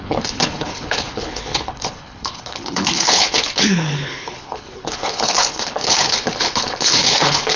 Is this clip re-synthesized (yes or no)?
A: yes